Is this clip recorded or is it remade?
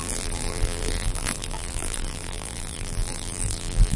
remade